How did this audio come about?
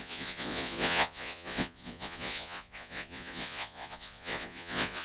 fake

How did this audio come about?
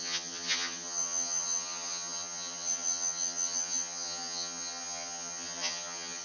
fake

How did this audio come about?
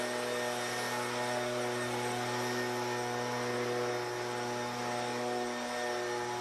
real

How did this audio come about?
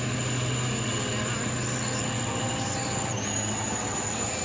real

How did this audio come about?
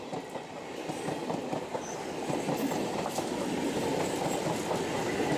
real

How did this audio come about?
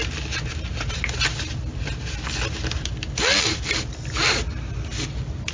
real